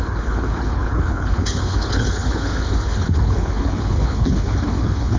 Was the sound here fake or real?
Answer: fake